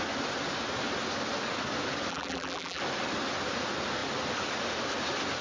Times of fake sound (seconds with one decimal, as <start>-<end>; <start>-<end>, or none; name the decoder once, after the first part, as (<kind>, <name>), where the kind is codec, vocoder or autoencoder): 2.1-2.8 (vocoder, BigVGAN v2)